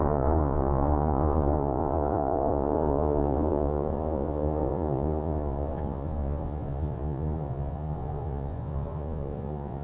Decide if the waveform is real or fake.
fake